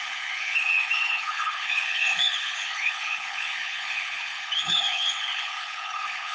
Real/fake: fake